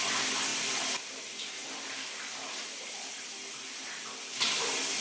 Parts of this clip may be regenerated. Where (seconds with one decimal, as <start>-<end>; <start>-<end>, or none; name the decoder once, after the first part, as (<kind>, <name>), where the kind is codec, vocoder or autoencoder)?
1.6-3.4 (vocoder, BigVGAN v2)